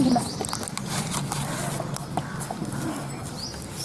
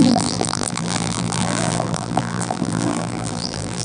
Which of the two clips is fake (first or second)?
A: second